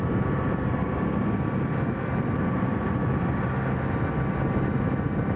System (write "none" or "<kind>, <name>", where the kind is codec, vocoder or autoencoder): none